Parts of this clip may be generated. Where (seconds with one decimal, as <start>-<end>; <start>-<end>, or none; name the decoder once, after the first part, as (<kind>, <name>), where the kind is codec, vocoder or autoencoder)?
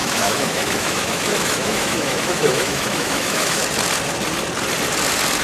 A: 0.0-3.6 (autoencoder, DAC-VAE)